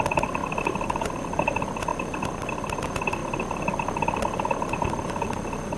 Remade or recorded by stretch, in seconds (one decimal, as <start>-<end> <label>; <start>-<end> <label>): 0.0-0.4 recorded; 0.4-1.2 remade; 1.2-5.8 recorded